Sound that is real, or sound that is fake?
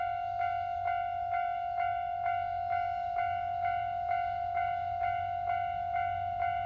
fake